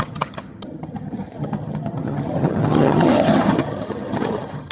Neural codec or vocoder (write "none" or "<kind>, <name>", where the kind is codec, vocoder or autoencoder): vocoder, HiFi-GAN